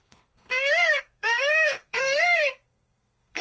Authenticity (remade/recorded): remade